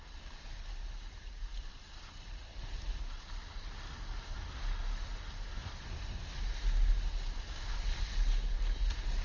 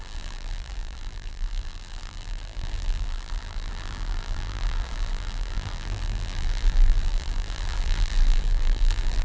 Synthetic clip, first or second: second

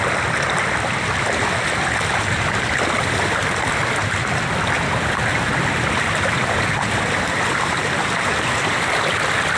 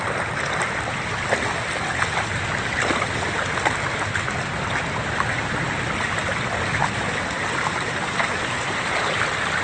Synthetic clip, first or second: first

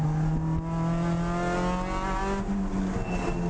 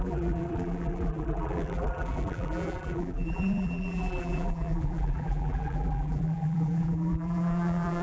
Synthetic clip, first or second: second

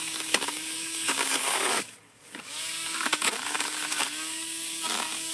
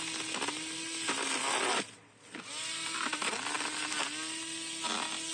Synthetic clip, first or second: first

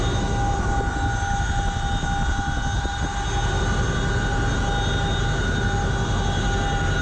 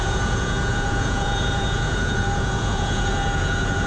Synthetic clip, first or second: second